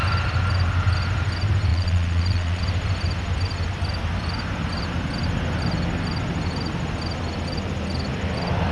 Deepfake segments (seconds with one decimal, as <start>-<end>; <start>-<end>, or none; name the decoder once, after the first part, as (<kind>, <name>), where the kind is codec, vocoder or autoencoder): 1.7-2.6 (vocoder, Vocos)